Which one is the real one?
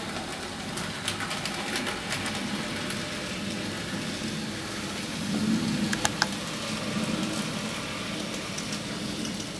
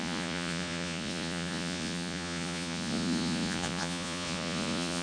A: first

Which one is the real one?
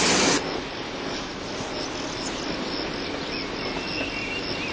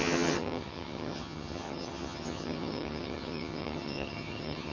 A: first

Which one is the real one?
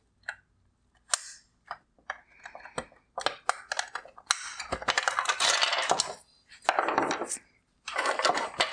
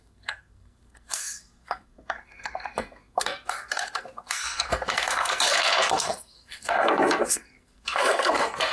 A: first